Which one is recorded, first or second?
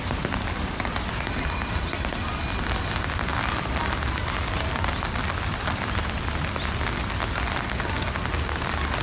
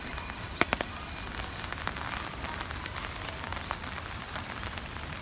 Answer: first